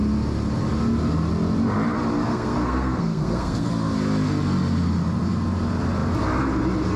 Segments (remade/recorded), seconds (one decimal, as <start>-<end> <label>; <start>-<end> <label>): 0.0-2.3 recorded; 2.3-3.7 remade; 3.7-7.0 recorded